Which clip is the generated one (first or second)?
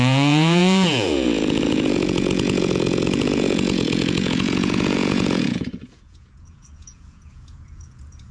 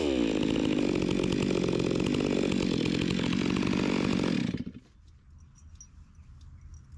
first